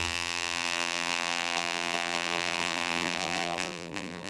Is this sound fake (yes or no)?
yes